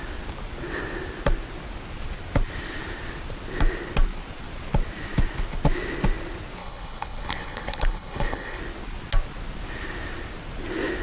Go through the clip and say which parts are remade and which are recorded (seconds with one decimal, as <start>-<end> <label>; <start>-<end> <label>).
0.0-6.6 recorded; 6.6-8.6 remade; 8.6-11.0 recorded

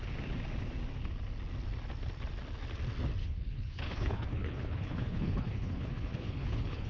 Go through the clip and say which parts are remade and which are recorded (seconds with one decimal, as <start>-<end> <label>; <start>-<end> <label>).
0.0-3.2 recorded; 3.2-6.9 remade

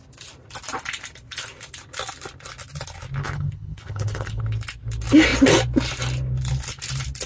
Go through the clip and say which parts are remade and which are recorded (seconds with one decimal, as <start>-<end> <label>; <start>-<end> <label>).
0.0-3.2 recorded; 3.2-4.4 remade; 4.4-7.3 recorded